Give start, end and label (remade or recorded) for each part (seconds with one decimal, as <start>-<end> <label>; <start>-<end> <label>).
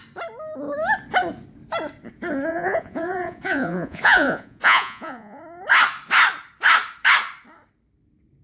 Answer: 0.0-2.5 recorded; 2.5-5.4 remade; 5.4-8.4 recorded